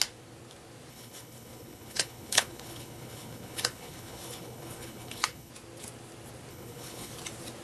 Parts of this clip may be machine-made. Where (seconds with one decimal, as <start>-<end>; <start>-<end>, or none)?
0.9-5.5; 6.5-7.1